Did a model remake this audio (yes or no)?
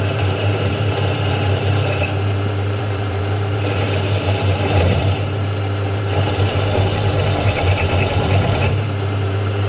yes